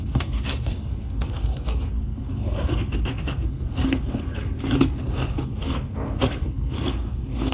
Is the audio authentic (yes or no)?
no